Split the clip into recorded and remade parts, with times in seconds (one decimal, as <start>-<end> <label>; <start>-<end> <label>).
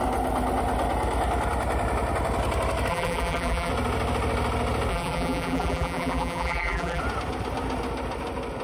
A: 0.0-2.9 recorded; 2.9-3.7 remade; 3.7-4.9 recorded; 4.9-7.0 remade; 7.0-8.6 recorded